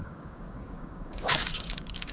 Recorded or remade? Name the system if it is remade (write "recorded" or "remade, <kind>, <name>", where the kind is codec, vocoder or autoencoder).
remade, codec, DAC